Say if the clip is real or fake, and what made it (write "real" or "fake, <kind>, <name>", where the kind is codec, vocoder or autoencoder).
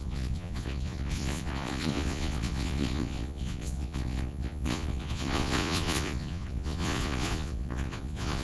fake, vocoder, Vocos